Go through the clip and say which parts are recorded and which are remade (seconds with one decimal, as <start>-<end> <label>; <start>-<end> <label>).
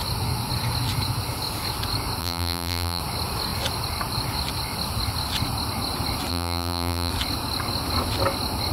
0.0-2.2 recorded; 2.2-3.0 remade; 3.0-6.3 recorded; 6.3-7.1 remade; 7.1-8.7 recorded